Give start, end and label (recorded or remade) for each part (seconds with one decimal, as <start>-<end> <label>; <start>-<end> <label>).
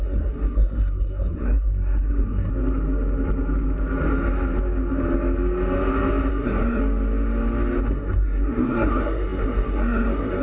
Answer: 0.0-2.5 remade; 2.5-6.3 recorded; 6.3-6.8 remade; 6.8-7.9 recorded; 7.9-10.4 remade